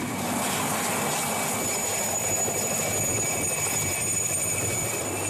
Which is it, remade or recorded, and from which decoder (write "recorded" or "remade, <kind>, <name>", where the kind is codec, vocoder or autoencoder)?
recorded